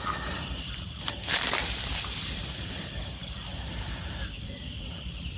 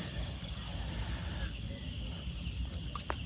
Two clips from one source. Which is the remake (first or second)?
first